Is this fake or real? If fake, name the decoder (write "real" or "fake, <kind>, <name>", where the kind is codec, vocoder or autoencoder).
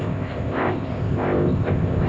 fake, codec, ZipCodec